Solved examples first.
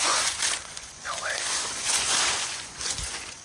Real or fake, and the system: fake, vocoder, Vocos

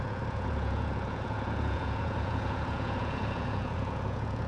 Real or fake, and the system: fake, vocoder, Vocos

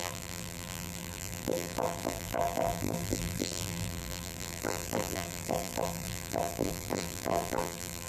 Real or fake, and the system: fake, vocoder, BigVGAN v2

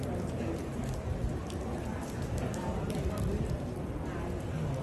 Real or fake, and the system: real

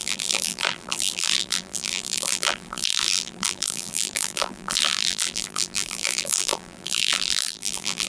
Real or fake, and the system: fake, vocoder, BigVGAN v2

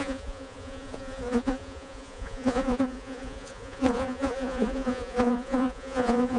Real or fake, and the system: fake, vocoder, Vocos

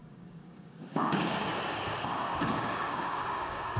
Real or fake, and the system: fake, codec, DAC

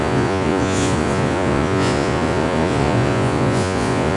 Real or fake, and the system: fake, vocoder, Vocos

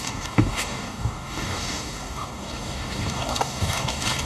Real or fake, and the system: fake, codec, DAC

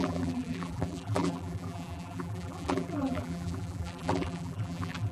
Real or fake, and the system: fake, vocoder, BigVGAN v2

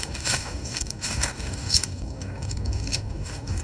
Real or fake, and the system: fake, codec, DAC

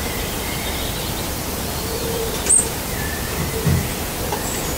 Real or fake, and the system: fake, vocoder, BigVGAN v2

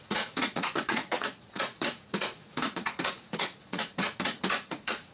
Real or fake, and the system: fake, vocoder, Vocos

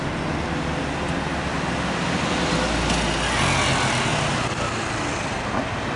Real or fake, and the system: real